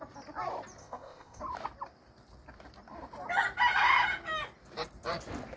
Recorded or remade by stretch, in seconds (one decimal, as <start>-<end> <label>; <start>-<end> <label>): 0.0-0.8 recorded; 0.8-1.4 remade; 1.4-5.6 recorded